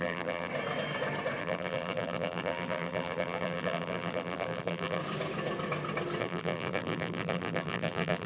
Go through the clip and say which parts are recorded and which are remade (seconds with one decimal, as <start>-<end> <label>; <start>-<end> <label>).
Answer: 0.0-0.5 remade; 0.5-1.4 recorded; 1.4-5.0 remade; 5.0-6.2 recorded; 6.2-8.3 remade